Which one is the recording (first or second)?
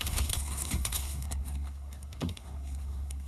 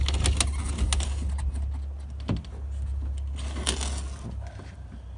second